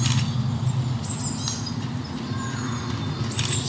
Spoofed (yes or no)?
no